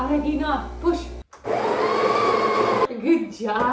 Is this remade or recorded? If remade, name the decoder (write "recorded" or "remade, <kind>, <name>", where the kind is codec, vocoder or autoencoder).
recorded